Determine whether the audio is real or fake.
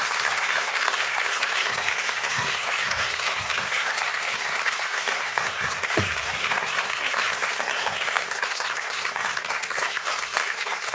fake